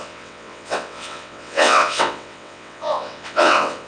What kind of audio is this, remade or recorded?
remade